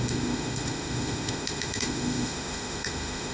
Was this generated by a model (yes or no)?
yes